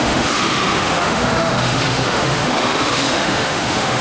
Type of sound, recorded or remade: remade